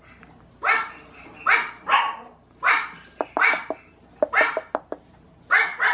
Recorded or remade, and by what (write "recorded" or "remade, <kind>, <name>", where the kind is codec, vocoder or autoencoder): recorded